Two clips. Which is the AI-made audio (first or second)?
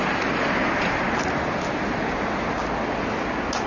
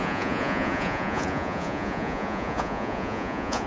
second